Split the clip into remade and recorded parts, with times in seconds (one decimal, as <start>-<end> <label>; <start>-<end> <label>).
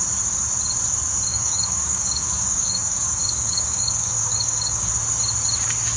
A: 0.0-1.3 recorded; 1.3-4.9 remade; 4.9-6.0 recorded